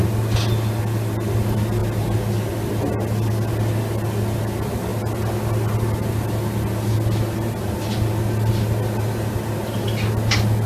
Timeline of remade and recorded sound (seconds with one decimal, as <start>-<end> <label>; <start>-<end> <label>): 0.0-10.7 recorded

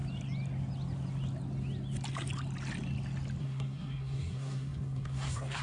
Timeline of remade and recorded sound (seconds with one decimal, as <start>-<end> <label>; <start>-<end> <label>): 0.0-3.4 recorded; 3.4-5.6 remade

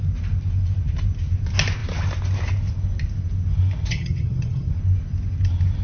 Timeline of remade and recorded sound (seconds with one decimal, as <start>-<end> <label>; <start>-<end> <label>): 0.0-3.9 recorded; 3.9-4.7 remade; 4.7-5.8 recorded

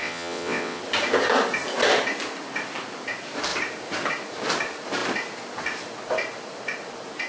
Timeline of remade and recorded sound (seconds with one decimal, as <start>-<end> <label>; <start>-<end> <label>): 0.0-0.8 remade; 0.8-7.3 recorded

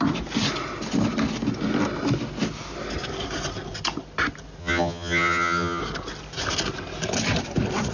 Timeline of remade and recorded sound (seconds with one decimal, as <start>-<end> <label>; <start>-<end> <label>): 0.0-4.6 recorded; 4.6-5.8 remade; 5.8-7.9 recorded

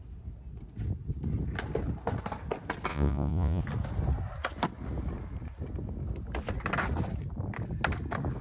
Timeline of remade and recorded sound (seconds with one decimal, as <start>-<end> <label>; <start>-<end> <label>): 0.0-2.9 recorded; 2.9-3.6 remade; 3.6-8.4 recorded